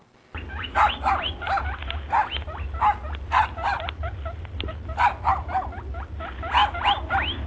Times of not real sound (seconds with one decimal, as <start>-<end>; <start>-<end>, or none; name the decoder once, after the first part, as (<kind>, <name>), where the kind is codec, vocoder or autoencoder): none